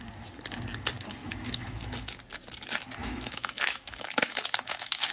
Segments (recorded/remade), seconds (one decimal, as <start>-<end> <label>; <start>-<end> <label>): 0.0-1.2 recorded; 1.2-2.2 remade; 2.2-3.0 recorded; 3.0-5.1 remade

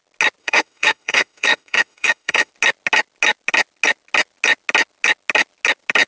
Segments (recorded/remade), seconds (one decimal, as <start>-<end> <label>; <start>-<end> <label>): 0.0-0.4 recorded; 0.4-2.5 remade; 2.5-6.1 recorded

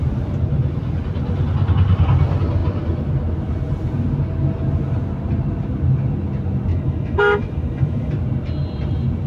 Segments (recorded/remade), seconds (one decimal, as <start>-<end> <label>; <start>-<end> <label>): 0.0-6.7 recorded; 6.7-8.1 remade; 8.1-9.3 recorded

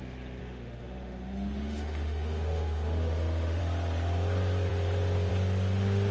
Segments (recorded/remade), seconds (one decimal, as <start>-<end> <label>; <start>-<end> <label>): 0.0-0.4 recorded; 0.4-3.6 remade; 3.6-6.1 recorded

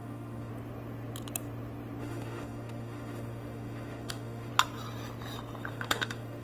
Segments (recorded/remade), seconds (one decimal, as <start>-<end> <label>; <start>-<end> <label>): 0.0-0.5 remade; 0.5-2.0 recorded; 2.0-4.5 remade; 4.5-5.7 recorded; 5.7-6.4 remade

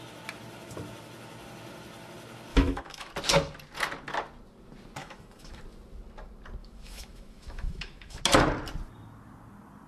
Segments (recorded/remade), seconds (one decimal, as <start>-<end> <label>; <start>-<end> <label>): 0.0-2.5 recorded; 2.5-3.1 remade; 3.1-5.0 recorded; 5.0-5.6 remade; 5.6-6.6 recorded; 6.6-8.2 remade; 8.2-9.9 recorded

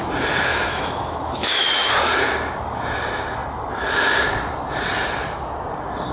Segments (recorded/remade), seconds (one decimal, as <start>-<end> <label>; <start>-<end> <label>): 0.0-0.5 recorded; 0.5-1.9 remade; 1.9-6.1 recorded